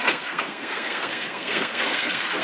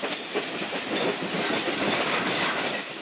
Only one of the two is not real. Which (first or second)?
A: first